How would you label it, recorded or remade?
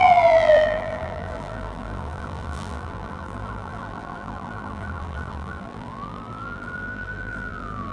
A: remade